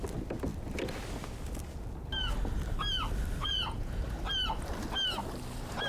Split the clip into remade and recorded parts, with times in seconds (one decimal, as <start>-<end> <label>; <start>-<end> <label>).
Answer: 0.0-3.4 recorded; 3.4-4.0 remade; 4.0-5.9 recorded